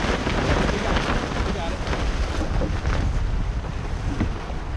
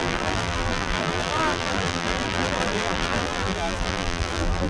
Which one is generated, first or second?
second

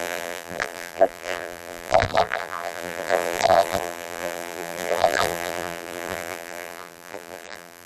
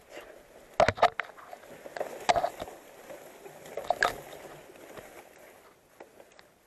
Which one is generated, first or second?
first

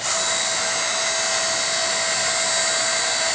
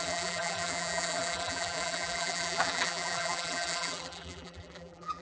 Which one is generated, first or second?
second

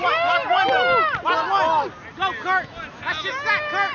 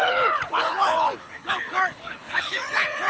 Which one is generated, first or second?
second